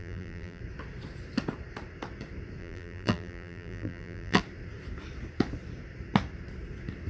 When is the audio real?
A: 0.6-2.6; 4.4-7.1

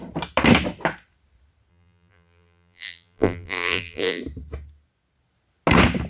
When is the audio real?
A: 0.0-1.7; 4.2-6.1

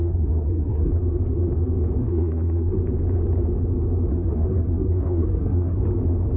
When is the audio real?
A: 0.9-2.0; 2.8-4.1; 5.8-6.4